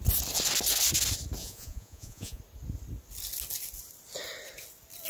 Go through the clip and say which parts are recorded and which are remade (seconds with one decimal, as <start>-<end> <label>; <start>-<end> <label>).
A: 0.0-1.4 recorded; 1.4-2.4 remade; 2.4-5.1 recorded